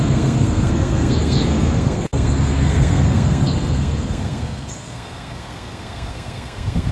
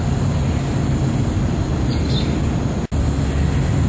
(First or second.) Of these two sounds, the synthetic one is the first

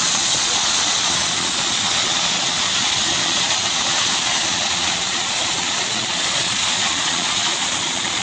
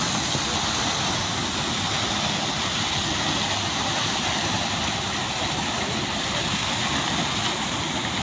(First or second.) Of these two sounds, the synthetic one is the first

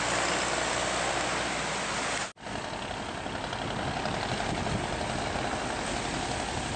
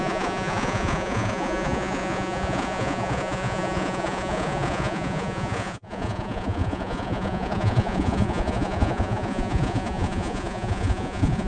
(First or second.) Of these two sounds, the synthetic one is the second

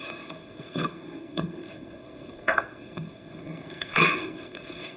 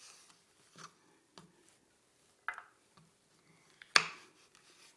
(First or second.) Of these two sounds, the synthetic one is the first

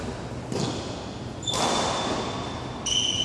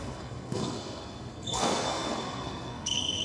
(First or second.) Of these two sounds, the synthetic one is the second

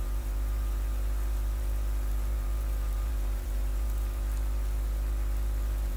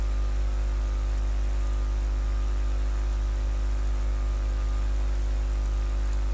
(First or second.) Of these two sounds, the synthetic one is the first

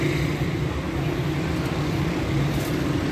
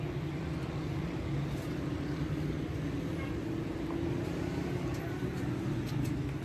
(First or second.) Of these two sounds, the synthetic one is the first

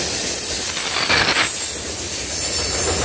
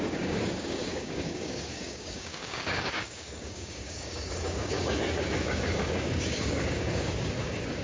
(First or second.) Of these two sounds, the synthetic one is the second